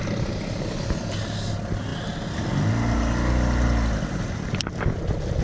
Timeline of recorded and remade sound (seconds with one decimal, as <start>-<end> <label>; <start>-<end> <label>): 0.0-5.4 recorded